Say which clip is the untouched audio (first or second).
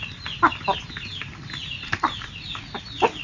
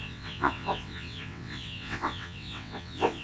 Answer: first